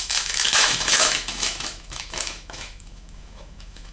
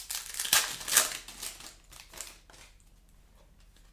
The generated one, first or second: first